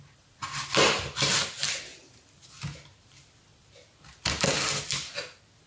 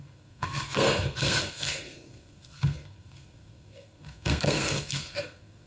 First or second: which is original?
first